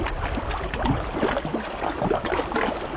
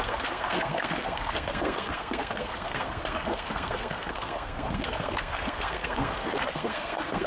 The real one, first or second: first